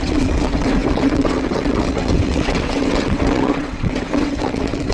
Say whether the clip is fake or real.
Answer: fake